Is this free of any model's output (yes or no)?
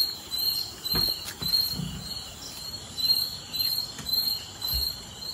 yes